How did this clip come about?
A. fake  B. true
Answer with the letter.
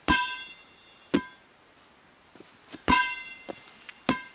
B